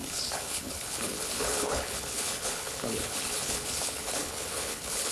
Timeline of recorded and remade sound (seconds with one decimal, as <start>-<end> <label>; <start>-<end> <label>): 0.0-5.1 remade